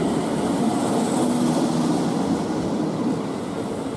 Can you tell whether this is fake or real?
real